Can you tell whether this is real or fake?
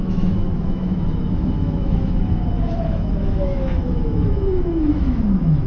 fake